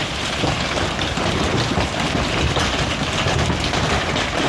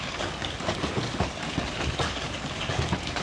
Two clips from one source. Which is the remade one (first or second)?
second